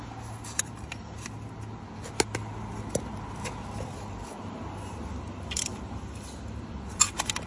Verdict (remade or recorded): recorded